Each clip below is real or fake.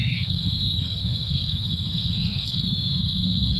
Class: fake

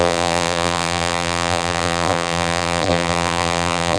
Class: fake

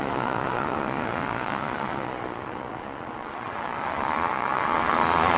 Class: fake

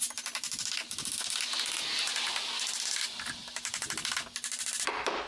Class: real